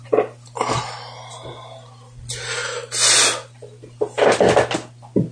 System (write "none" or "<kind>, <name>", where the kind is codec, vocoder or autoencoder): none